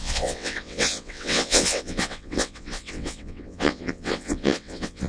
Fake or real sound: fake